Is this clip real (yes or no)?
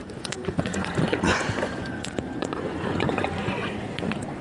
no